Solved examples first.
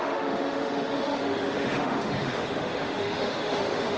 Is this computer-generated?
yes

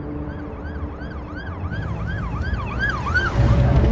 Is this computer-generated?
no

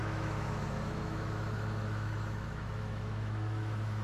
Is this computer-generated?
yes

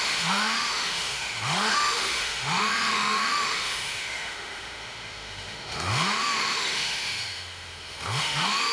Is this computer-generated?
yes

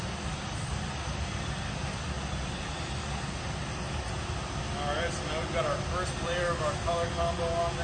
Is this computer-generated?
no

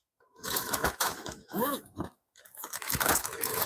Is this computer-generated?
yes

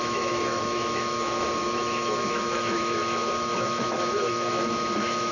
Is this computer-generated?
yes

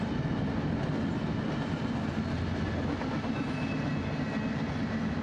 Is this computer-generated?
no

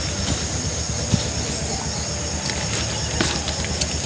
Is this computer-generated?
no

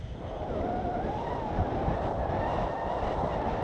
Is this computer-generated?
no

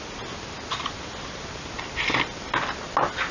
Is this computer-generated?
no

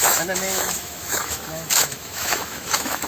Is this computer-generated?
yes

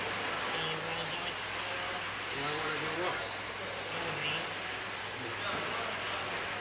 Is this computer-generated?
no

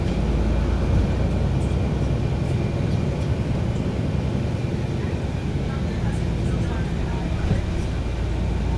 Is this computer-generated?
no